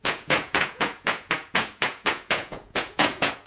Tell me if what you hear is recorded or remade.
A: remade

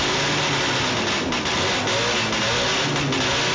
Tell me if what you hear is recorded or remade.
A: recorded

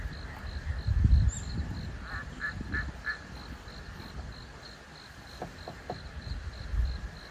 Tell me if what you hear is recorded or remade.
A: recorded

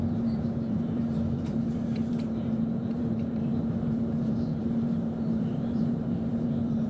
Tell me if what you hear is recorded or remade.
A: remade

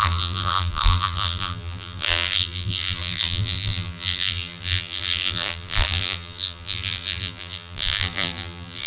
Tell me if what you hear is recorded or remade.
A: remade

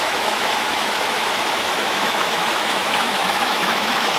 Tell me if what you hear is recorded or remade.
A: remade